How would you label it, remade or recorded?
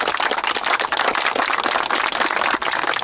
recorded